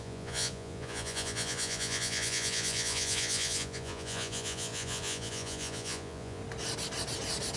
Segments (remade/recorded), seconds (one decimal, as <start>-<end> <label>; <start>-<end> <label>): 0.0-6.4 remade; 6.4-7.6 recorded